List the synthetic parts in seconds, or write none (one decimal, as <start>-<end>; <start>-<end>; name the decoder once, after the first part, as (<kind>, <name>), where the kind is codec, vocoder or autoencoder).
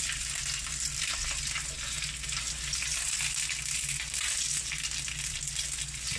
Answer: none